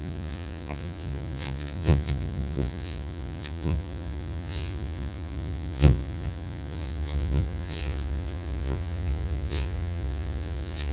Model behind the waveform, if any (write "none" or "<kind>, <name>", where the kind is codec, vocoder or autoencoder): vocoder, Vocos